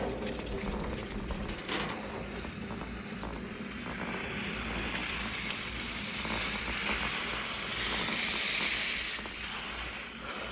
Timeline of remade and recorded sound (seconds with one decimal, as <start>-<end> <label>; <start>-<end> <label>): 0.0-5.0 recorded; 5.0-6.6 remade; 6.6-10.5 recorded